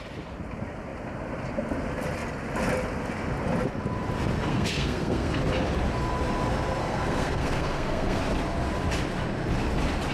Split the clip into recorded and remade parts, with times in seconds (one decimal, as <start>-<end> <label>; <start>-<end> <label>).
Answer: 0.0-4.5 recorded; 4.5-5.4 remade; 5.4-6.8 recorded; 6.8-8.2 remade; 8.2-10.1 recorded